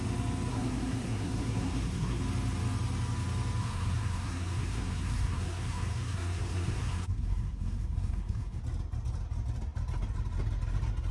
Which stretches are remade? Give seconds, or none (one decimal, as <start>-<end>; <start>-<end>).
0.5-2.2; 3.6-8.6